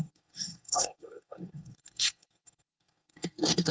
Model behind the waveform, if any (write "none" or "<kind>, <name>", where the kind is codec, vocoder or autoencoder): codec, SNAC